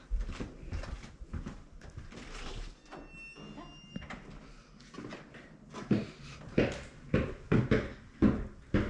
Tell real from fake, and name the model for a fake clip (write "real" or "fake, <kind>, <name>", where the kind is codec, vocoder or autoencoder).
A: real